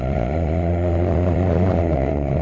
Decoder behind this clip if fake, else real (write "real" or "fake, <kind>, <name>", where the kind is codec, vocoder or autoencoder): fake, vocoder, Vocos